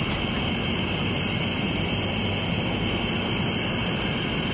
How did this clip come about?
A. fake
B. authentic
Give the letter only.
B